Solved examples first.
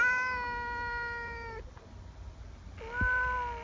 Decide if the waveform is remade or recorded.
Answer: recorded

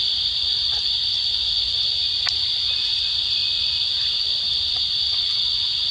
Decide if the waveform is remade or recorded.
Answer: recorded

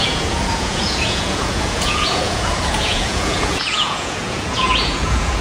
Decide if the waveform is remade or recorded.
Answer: remade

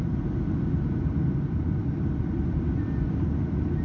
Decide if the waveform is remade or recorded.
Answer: recorded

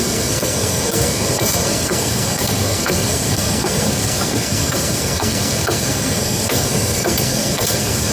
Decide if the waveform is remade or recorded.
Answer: remade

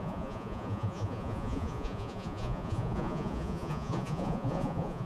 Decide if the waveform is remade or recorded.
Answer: remade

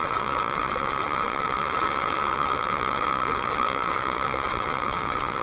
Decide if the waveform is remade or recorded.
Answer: remade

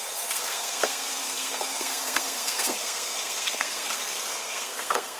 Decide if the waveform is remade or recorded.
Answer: remade